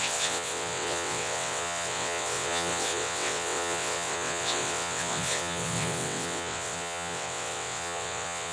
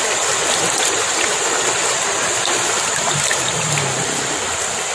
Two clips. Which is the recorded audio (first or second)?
second